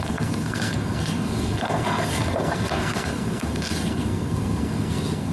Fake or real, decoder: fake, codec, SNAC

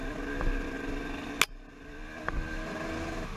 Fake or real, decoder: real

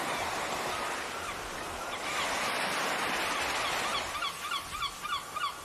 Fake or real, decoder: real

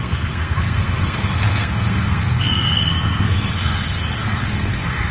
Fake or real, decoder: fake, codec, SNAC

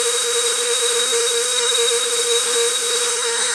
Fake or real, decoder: fake, codec, SNAC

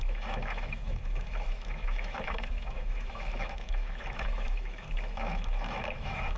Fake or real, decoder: fake, autoencoder, DAC-VAE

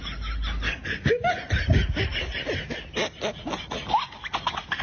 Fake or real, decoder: real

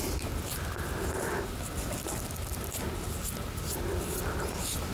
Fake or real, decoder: real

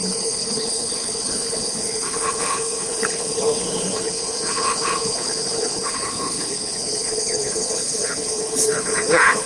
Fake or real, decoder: fake, codec, HILCodec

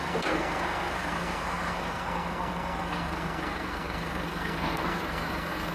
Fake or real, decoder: fake, codec, SNAC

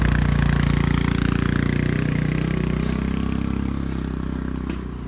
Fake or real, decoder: real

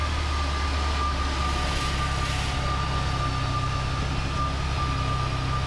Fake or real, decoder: real